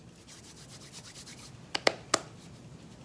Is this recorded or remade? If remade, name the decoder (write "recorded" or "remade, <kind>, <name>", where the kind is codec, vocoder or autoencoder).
recorded